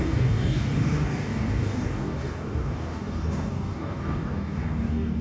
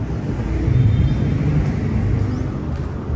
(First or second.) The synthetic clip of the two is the first